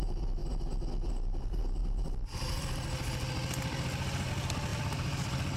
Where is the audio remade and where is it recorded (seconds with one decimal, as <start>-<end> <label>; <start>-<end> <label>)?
0.0-0.4 remade; 0.4-1.4 recorded; 1.4-5.6 remade